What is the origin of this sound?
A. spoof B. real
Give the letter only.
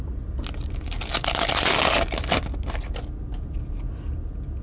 B